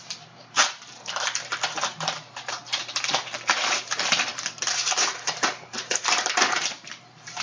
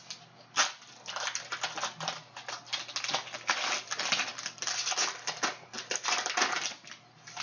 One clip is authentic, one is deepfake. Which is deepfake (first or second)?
first